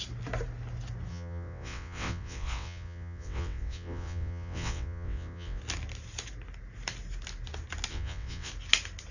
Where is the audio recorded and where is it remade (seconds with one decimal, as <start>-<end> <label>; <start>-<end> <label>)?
0.0-1.1 recorded; 1.1-5.6 remade; 5.6-7.9 recorded; 7.9-8.5 remade; 8.5-9.1 recorded